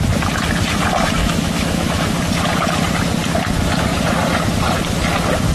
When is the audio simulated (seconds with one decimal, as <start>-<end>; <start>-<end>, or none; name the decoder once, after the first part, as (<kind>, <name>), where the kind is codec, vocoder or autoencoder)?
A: 1.2-2.2 (autoencoder, DAC-VAE)